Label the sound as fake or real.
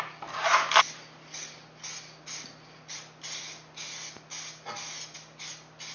real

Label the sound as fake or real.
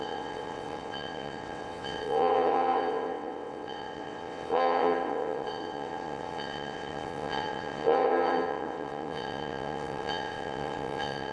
fake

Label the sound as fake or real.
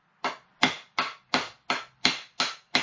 real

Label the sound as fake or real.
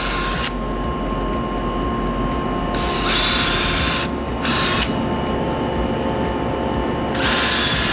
real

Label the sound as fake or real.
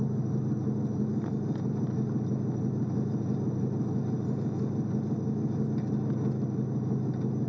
real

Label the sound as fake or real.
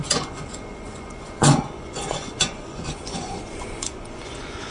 fake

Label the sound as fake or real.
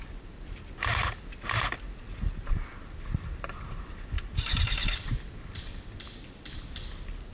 real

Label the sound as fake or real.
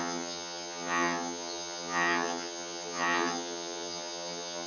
fake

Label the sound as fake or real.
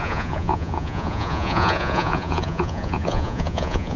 fake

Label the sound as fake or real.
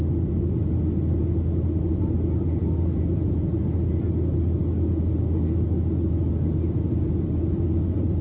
real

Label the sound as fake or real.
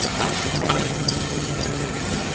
fake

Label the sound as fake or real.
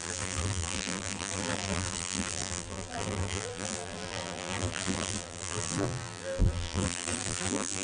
fake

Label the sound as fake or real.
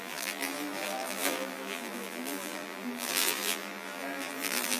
fake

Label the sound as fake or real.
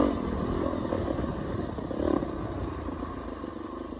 real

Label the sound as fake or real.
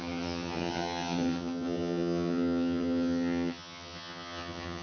fake